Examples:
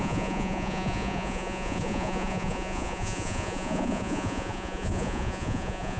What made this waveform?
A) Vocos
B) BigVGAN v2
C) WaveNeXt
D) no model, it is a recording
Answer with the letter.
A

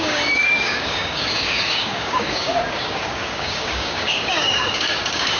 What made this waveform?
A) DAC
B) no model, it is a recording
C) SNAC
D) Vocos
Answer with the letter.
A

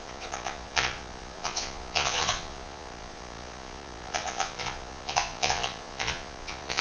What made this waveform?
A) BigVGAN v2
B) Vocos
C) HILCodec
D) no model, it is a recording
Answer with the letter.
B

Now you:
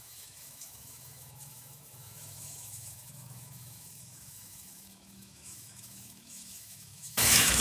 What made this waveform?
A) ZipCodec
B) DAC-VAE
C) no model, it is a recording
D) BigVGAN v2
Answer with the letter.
B